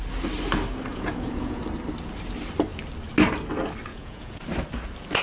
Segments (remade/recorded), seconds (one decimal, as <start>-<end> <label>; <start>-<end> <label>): 0.0-0.9 recorded; 0.9-1.6 remade; 1.6-3.9 recorded; 3.9-4.4 remade; 4.4-5.2 recorded